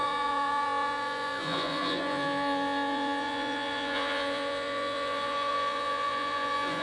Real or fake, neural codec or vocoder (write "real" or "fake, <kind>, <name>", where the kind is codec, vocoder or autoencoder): fake, vocoder, Vocos